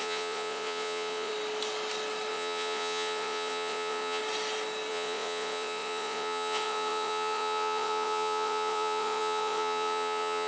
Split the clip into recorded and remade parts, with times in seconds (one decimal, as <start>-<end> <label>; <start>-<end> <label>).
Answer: 0.0-1.3 remade; 1.3-2.3 recorded; 2.3-4.2 remade; 4.2-4.9 recorded; 4.9-10.5 remade

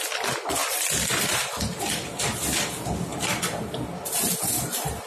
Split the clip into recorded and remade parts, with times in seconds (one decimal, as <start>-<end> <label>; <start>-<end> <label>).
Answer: 0.0-0.6 recorded; 0.6-2.3 remade; 2.3-5.1 recorded

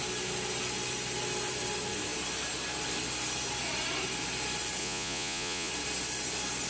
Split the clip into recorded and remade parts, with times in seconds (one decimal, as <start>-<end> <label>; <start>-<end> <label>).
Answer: 0.0-4.8 recorded; 4.8-5.7 remade; 5.7-6.7 recorded

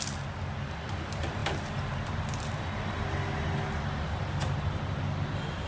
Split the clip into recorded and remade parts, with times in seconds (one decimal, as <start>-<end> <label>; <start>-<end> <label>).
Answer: 0.0-5.7 recorded

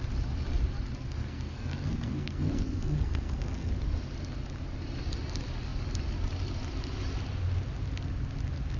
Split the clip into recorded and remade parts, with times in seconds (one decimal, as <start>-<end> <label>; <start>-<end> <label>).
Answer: 0.0-1.2 recorded; 1.2-3.7 remade; 3.7-8.8 recorded

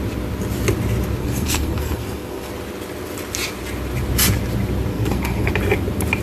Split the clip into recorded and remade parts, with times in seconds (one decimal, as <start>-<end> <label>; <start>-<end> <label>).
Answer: 0.0-1.2 recorded; 1.2-2.5 remade; 2.5-4.9 recorded; 4.9-5.5 remade; 5.5-6.2 recorded